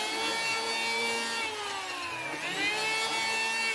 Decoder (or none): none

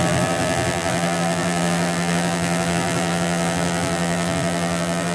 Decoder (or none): vocoder, BigVGAN v2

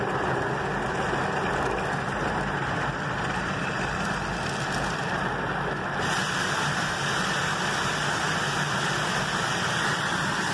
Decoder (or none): none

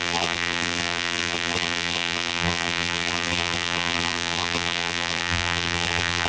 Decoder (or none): vocoder, BigVGAN v2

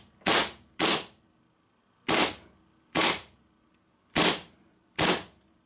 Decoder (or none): vocoder, BigVGAN v2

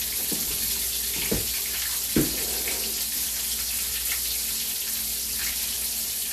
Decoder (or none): none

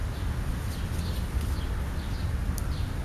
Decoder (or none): none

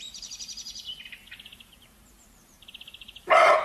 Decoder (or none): vocoder, BigVGAN v2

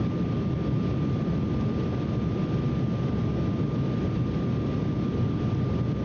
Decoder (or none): vocoder, BigVGAN v2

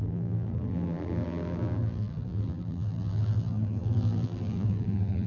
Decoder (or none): vocoder, BigVGAN v2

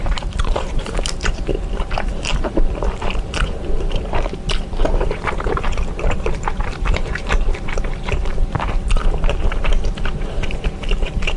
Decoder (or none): vocoder, BigVGAN v2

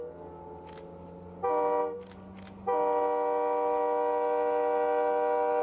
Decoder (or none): none